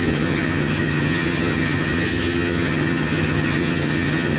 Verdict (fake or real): fake